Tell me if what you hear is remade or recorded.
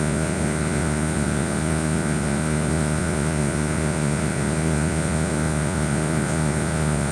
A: remade